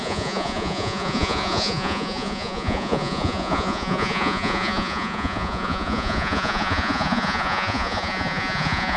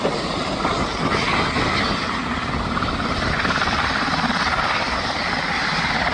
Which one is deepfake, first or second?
first